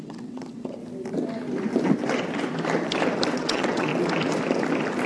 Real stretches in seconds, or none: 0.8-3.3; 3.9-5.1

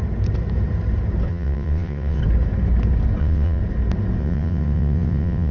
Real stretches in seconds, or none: 0.0-1.3; 2.2-3.2; 3.6-4.2

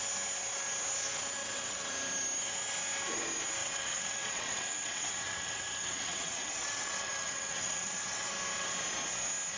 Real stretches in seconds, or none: 0.0-1.4; 1.9-3.6; 8.3-9.6

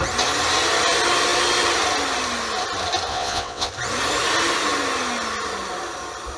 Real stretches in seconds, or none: 0.0-3.1; 3.7-6.4

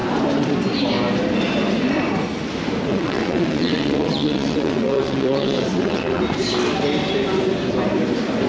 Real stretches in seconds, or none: 0.0-2.9; 6.2-8.5